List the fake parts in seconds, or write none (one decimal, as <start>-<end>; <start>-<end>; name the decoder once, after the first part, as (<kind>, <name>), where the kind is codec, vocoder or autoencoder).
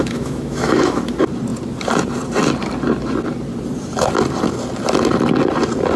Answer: 0.0-1.0 (autoencoder, DAC-VAE)